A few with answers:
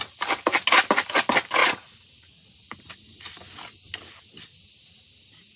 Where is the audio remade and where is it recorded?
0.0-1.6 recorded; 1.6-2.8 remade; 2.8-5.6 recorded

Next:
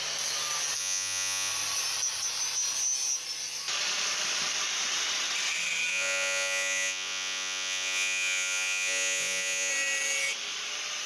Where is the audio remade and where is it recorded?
0.0-0.8 recorded; 0.8-1.5 remade; 1.5-5.9 recorded; 5.9-9.7 remade; 9.7-11.1 recorded

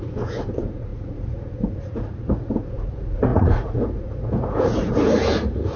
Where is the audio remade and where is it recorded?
0.0-5.8 remade

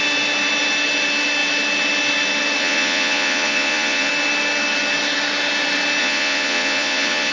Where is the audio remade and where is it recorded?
0.0-2.6 recorded; 2.6-4.1 remade; 4.1-6.0 recorded; 6.0-7.3 remade

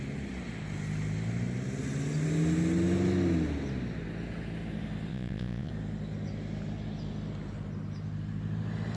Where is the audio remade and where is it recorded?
0.0-5.1 recorded; 5.1-5.7 remade; 5.7-9.0 recorded

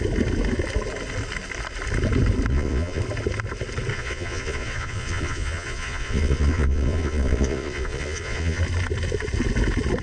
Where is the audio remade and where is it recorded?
0.0-2.5 recorded; 2.5-3.0 remade; 3.0-3.9 recorded; 3.9-8.6 remade; 8.6-10.0 recorded